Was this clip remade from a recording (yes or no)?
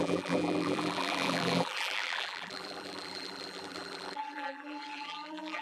yes